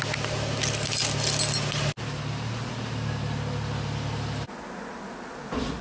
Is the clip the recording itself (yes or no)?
yes